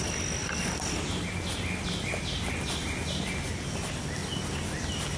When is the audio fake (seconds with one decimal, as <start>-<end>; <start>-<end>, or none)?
none